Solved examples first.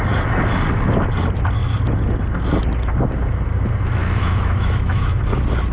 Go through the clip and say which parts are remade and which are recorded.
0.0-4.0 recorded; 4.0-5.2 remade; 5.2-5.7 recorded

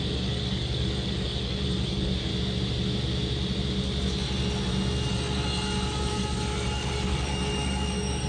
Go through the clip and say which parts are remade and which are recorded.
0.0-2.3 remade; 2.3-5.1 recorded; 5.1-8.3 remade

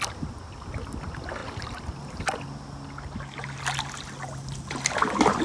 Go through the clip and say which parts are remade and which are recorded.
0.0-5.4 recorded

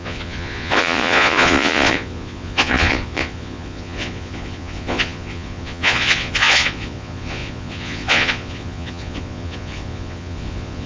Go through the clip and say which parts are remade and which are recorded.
0.0-10.9 remade

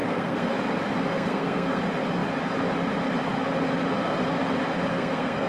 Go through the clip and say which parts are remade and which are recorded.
0.0-0.5 remade; 0.5-1.1 recorded; 1.1-1.8 remade; 1.8-4.9 recorded; 4.9-5.5 remade

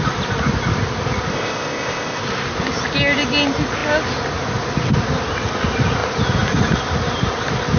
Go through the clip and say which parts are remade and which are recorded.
0.0-1.3 recorded; 1.3-2.2 remade; 2.2-7.8 recorded

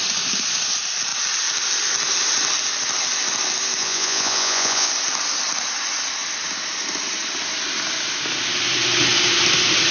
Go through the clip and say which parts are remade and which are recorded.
0.0-3.8 recorded; 3.8-4.9 remade; 4.9-9.9 recorded